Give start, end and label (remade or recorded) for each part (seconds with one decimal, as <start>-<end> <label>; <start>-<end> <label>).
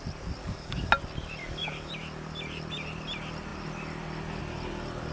0.0-0.4 recorded; 0.4-0.9 remade; 0.9-1.4 recorded; 1.4-1.9 remade; 1.9-5.1 recorded